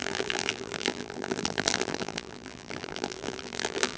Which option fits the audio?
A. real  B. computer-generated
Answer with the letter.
B